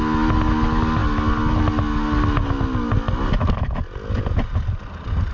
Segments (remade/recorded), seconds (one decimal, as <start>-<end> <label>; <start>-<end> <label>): 0.0-5.3 recorded

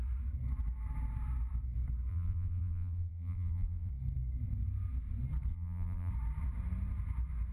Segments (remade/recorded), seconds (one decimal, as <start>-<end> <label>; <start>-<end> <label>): 0.0-2.1 recorded; 2.1-3.9 remade; 3.9-5.5 recorded; 5.5-6.1 remade; 6.1-7.5 recorded

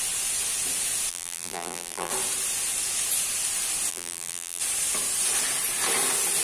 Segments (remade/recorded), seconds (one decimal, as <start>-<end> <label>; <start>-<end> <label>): 0.0-1.1 recorded; 1.1-2.1 remade; 2.1-3.9 recorded; 3.9-4.6 remade; 4.6-6.4 recorded

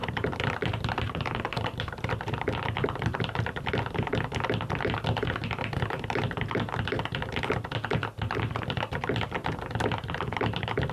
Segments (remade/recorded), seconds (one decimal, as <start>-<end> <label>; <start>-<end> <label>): 0.0-3.2 remade; 3.2-10.9 recorded

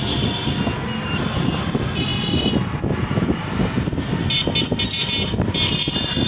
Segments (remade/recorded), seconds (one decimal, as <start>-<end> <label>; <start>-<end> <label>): 0.0-2.1 remade; 2.1-2.8 recorded; 2.8-4.4 remade; 4.4-4.9 recorded; 4.9-6.3 remade

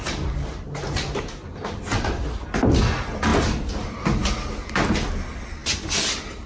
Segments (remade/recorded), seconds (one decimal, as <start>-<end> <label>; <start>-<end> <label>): 0.0-1.9 recorded; 1.9-2.8 remade; 2.8-3.3 recorded; 3.3-4.3 remade; 4.3-6.5 recorded

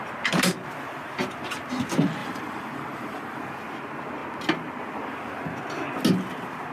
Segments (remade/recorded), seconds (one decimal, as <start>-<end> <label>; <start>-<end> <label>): 0.0-2.2 recorded; 2.2-3.4 remade; 3.4-6.7 recorded